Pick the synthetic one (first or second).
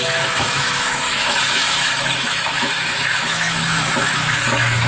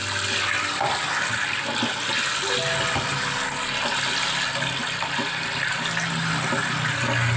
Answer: first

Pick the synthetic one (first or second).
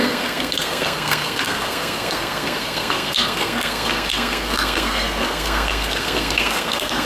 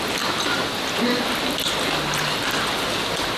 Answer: first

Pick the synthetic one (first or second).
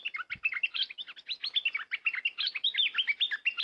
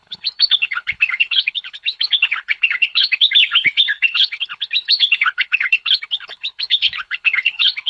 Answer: second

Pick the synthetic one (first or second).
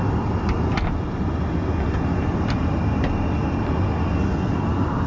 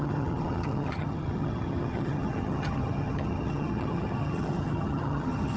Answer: second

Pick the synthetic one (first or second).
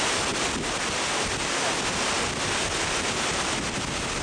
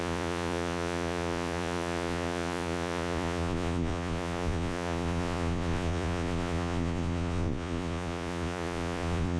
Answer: second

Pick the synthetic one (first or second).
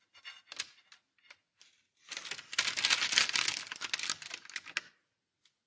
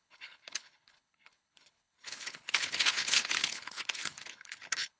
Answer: second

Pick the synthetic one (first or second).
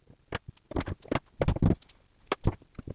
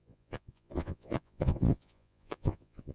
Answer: second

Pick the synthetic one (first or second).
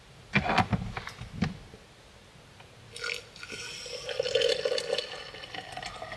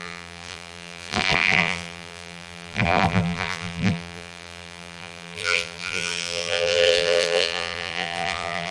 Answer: second